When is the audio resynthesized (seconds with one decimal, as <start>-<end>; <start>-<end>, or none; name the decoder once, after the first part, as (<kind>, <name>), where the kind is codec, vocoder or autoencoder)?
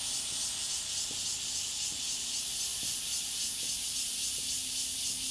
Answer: none